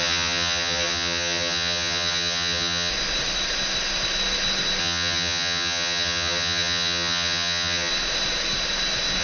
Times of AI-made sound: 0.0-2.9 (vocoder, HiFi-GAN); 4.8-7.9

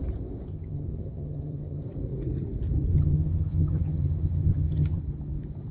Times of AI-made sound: 0.5-1.8 (vocoder, HiFi-GAN); 2.9-5.0